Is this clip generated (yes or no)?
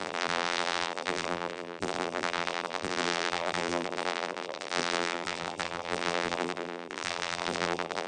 yes